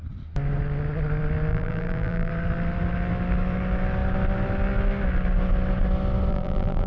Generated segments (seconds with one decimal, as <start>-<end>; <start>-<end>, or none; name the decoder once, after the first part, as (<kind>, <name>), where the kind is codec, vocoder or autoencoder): 1.5-2.3 (vocoder, BigVGAN v2); 6.3-6.9